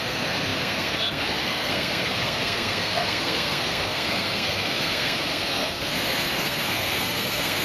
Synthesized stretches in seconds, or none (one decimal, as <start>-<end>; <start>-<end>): 0.0-7.6